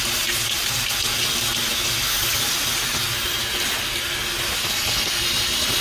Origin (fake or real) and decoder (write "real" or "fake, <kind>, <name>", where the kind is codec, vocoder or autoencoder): real